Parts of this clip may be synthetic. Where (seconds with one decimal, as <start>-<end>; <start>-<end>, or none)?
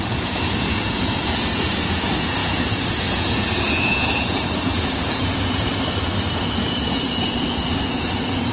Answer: 0.0-5.7; 6.3-8.5